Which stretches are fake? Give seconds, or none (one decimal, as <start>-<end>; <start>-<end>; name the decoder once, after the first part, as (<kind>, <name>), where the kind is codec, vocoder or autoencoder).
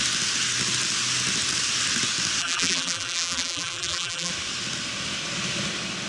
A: 2.4-4.3 (vocoder, BigVGAN v2)